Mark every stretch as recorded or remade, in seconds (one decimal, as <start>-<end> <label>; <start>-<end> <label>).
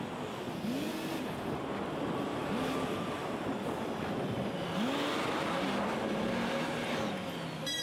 0.0-7.8 recorded